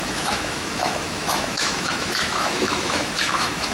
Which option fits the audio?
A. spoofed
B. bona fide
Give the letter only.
A